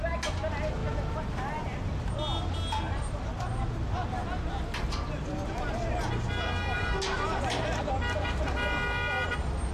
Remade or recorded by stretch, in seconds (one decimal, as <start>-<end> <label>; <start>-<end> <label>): 0.0-9.7 recorded